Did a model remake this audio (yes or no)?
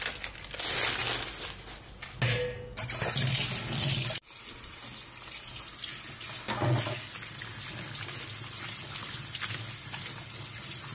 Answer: no